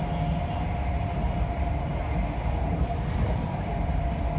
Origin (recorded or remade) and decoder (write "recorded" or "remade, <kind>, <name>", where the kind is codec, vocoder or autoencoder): recorded